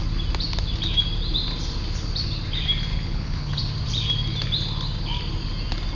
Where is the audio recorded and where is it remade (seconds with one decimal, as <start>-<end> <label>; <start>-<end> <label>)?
0.0-2.9 recorded; 2.9-3.6 remade; 3.6-5.9 recorded